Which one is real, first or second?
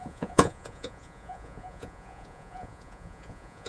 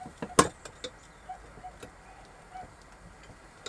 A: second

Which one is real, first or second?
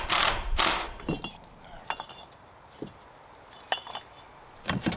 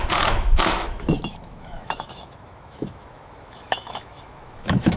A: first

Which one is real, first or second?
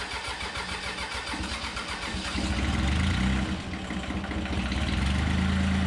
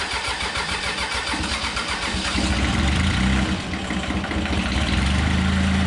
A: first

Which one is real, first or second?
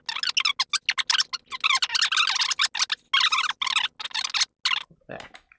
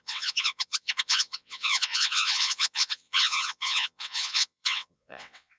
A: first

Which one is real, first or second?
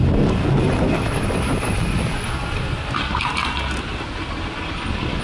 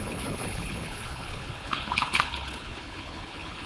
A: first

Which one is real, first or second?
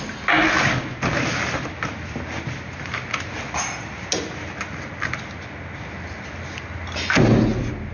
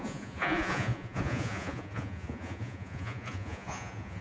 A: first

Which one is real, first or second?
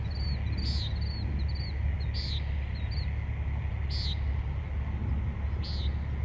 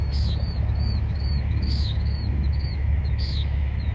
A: first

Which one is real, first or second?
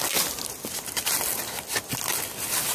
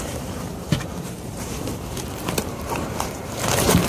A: first